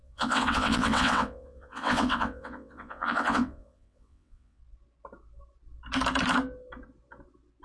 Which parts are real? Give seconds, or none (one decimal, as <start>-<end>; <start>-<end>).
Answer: 4.6-7.6